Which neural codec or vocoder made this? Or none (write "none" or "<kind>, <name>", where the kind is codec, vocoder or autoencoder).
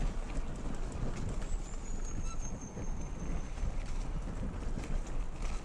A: none